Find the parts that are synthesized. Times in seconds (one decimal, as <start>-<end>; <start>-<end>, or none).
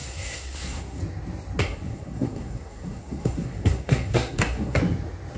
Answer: 0.0-1.0; 1.6-4.8